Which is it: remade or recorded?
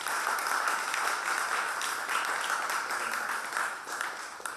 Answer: recorded